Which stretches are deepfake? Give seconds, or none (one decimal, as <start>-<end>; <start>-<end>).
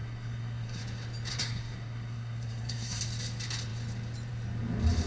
0.0-0.8; 1.3-3.0